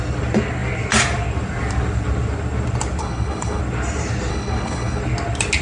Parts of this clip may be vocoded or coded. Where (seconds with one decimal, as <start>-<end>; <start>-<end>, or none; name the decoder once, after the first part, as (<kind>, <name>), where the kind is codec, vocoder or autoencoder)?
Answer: 3.0-3.6 (codec, HILCodec); 4.3-5.0